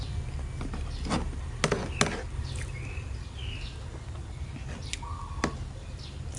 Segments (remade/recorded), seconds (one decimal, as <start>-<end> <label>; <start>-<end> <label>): 0.0-6.4 recorded